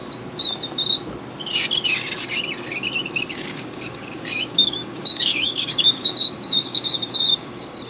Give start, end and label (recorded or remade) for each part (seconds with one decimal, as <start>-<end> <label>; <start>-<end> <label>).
0.0-3.3 recorded; 3.3-7.9 remade